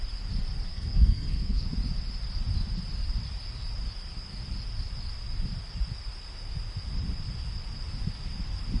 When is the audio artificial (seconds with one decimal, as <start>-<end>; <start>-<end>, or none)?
0.7-1.6